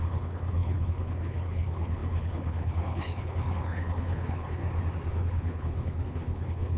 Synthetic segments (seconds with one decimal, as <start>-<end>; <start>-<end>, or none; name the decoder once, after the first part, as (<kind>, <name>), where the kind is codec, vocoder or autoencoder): 0.0-4.6 (codec, HILCodec); 5.1-6.8